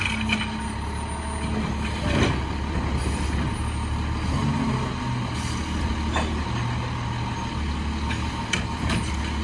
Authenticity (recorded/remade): recorded